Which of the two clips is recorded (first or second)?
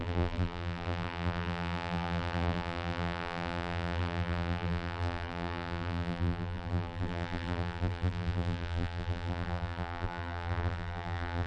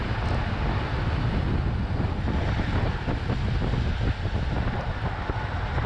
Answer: second